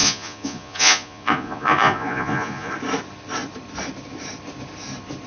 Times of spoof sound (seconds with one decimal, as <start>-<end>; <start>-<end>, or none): 0.0-2.7